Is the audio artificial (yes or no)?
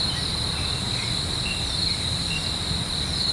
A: no